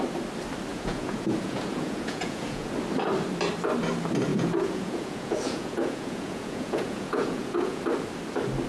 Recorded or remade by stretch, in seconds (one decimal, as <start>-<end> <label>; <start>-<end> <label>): 0.0-0.7 recorded; 0.7-2.7 remade; 2.7-4.3 recorded; 4.3-7.8 remade; 7.8-8.7 recorded